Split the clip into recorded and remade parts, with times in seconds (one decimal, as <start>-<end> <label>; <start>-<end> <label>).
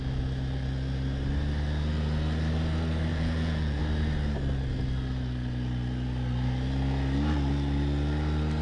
0.0-3.1 recorded; 3.1-3.8 remade; 3.8-8.6 recorded